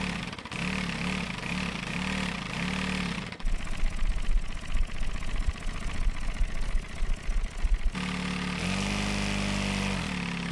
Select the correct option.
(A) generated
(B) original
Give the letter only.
B